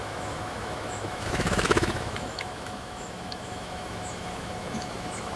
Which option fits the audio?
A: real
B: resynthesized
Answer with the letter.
B